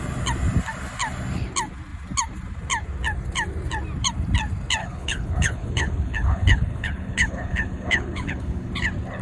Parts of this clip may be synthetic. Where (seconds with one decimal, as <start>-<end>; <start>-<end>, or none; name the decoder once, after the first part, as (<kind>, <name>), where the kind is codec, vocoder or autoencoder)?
4.8-8.7 (codec, HILCodec)